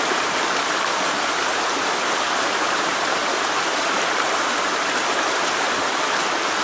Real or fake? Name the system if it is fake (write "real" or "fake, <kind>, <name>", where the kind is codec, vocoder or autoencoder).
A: fake, vocoder, BigVGAN v2